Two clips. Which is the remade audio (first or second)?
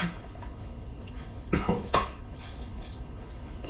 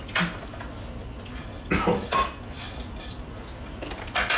first